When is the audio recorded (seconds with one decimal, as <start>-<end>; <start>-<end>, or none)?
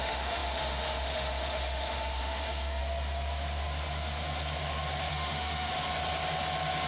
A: 2.8-5.1; 5.7-6.9